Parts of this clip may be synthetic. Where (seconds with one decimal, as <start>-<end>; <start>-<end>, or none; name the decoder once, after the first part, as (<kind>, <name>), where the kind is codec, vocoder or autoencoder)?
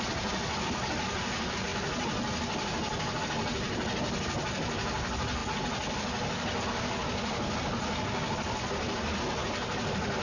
none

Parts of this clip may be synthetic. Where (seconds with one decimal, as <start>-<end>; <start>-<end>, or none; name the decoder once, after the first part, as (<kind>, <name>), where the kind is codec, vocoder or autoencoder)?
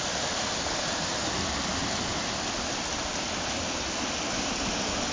none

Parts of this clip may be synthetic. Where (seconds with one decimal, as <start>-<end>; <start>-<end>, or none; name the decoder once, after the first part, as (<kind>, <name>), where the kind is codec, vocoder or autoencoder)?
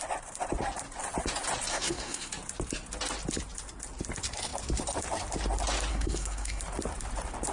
1.7-2.3 (codec, SNAC); 5.9-6.6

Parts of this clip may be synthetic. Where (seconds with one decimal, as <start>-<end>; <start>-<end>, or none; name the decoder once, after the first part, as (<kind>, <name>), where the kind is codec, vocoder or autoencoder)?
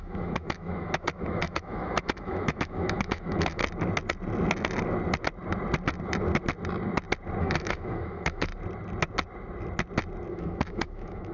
0.0-3.6 (autoencoder, DAC-VAE); 7.4-8.5; 10.3-11.3